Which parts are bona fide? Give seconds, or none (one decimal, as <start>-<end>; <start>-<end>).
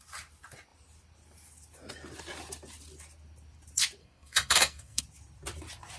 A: 0.0-4.0; 5.0-6.0